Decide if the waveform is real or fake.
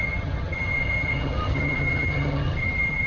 fake